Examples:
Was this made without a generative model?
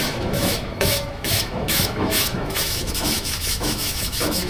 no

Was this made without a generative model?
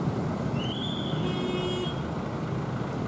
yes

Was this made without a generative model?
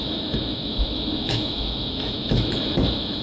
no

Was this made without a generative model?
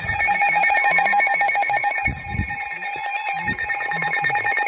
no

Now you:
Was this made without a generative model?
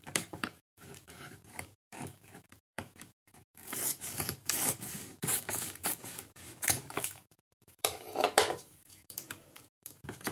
no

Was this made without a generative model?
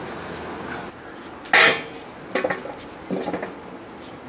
yes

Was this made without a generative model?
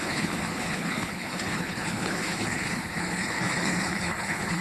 no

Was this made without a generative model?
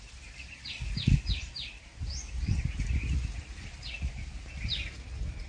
yes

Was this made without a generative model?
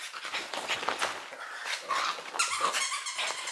yes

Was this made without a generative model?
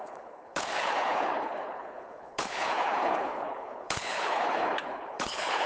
no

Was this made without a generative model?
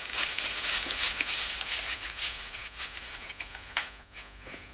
yes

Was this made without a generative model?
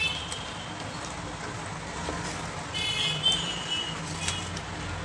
yes